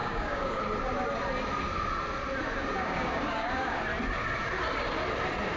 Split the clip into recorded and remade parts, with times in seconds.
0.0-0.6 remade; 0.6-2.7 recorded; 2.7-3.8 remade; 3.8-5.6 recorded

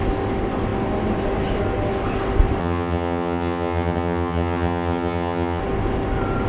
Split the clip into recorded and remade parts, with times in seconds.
0.0-2.6 recorded; 2.6-5.6 remade; 5.6-6.5 recorded